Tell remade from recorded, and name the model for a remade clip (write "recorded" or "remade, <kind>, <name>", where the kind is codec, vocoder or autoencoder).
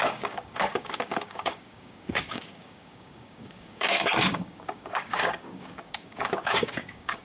remade, codec, DAC